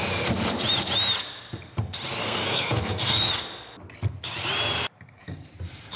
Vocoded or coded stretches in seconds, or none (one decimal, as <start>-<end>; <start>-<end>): 2.2-3.3